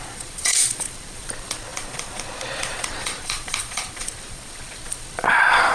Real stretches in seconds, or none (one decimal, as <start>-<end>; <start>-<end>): none